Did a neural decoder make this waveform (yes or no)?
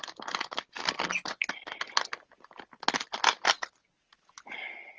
no